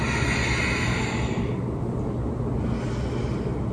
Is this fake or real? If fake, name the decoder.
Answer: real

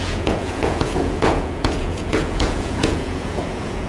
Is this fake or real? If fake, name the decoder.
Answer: fake, vocoder, Vocos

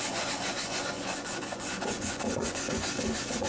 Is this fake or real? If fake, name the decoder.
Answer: fake, vocoder, Vocos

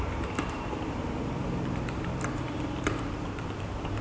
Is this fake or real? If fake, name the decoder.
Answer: fake, vocoder, BigVGAN v2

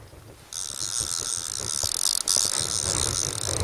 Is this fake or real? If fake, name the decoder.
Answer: real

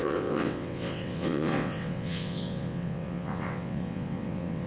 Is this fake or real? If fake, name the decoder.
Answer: fake, vocoder, WaveNeXt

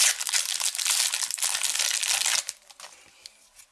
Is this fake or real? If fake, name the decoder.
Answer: real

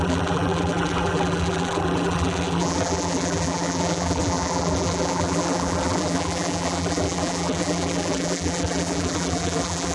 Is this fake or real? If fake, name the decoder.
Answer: fake, vocoder, BigVGAN v2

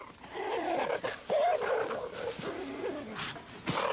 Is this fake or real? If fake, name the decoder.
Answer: real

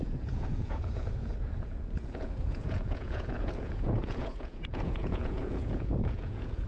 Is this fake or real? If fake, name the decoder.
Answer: fake, vocoder, Vocos